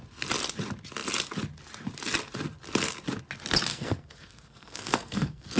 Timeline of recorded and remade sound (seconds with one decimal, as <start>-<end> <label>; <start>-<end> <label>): 0.0-3.7 recorded; 3.7-5.6 remade